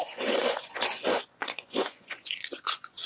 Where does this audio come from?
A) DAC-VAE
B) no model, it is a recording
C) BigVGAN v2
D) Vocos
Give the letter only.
D